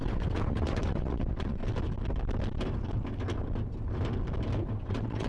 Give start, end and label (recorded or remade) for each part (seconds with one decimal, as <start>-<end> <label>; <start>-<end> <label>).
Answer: 0.0-1.6 remade; 1.6-4.8 recorded; 4.8-5.3 remade

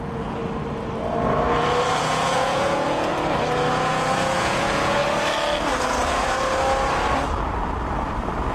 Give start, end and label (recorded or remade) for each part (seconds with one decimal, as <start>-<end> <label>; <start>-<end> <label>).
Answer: 0.0-0.4 remade; 0.4-2.0 recorded; 2.0-3.1 remade; 3.1-3.7 recorded; 3.7-5.0 remade; 5.0-8.5 recorded

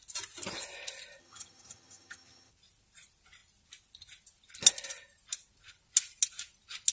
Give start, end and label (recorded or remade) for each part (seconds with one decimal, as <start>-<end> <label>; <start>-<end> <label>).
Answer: 0.0-1.2 recorded; 1.2-2.5 remade; 2.5-6.9 recorded

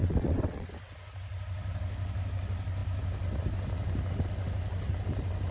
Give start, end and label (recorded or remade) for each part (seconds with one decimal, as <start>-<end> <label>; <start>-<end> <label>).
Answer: 0.0-0.7 remade; 0.7-5.5 recorded

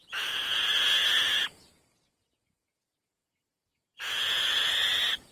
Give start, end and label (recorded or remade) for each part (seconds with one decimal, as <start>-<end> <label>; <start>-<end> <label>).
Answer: 0.0-5.3 remade

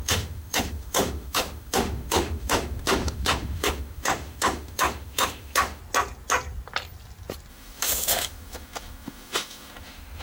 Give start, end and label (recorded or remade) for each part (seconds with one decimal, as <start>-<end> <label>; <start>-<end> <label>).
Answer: 0.0-5.8 remade; 5.8-7.5 recorded; 7.5-10.2 remade